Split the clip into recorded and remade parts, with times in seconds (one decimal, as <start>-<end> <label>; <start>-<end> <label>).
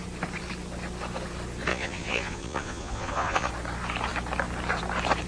0.0-1.7 recorded; 1.7-3.5 remade; 3.5-5.3 recorded